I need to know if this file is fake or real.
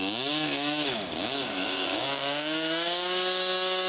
fake